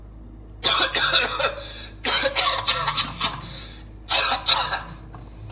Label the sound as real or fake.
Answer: real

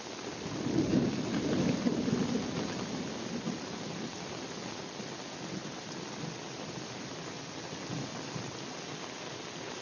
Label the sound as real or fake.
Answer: real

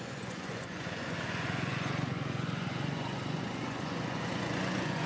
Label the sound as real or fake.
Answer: fake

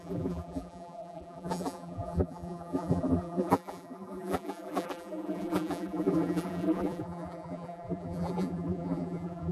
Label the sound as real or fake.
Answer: fake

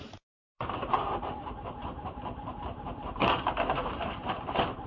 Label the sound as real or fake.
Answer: fake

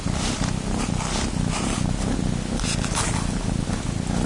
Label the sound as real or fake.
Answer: real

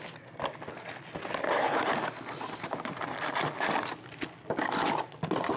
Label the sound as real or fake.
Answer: real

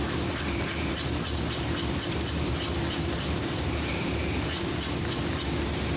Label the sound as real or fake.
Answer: fake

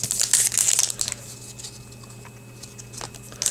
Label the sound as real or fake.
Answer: real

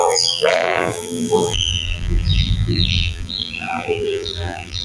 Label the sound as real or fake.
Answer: fake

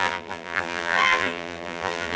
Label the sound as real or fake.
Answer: fake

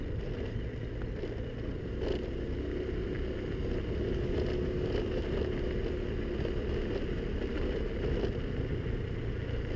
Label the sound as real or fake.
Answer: real